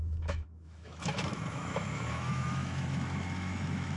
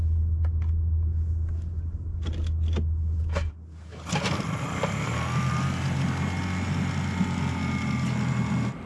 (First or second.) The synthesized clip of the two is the first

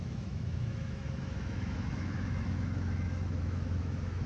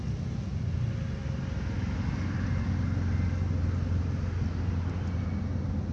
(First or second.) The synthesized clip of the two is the first